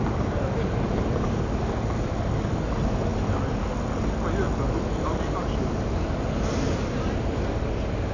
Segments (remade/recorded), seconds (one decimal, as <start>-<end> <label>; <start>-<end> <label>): 0.0-8.1 recorded